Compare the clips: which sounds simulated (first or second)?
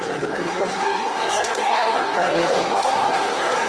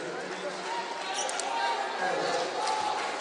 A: first